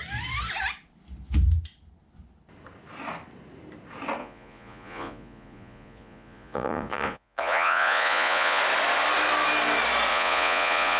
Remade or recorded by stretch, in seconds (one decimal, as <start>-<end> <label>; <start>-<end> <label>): 0.0-4.2 recorded; 4.2-8.6 remade; 8.6-10.1 recorded; 10.1-11.0 remade